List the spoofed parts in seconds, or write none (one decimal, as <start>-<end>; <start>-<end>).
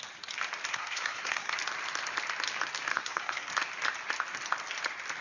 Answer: 0.7-1.5; 2.9-3.5